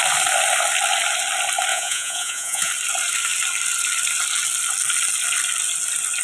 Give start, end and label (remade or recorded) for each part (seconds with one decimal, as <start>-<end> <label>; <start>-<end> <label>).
0.0-1.7 recorded; 1.7-2.7 remade; 2.7-6.2 recorded